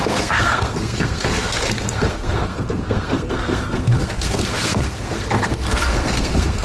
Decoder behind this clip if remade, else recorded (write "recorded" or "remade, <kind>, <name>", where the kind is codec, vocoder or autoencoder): remade, codec, SNAC